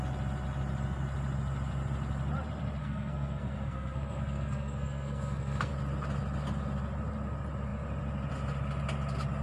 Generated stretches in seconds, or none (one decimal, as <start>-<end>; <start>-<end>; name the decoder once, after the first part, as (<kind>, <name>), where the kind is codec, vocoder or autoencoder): 2.8-5.7 (codec, SNAC)